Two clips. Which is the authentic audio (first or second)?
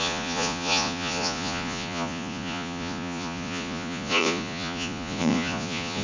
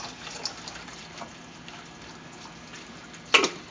second